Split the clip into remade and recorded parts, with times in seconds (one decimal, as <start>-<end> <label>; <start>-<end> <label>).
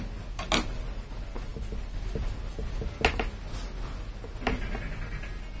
0.0-5.6 recorded